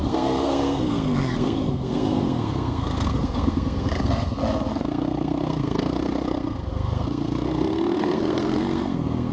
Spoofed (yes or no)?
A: yes